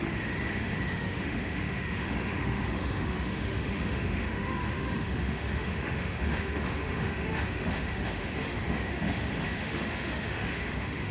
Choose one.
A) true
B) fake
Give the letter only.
B